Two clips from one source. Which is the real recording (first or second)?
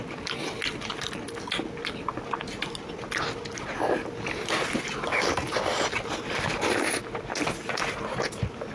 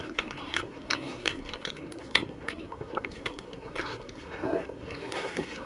first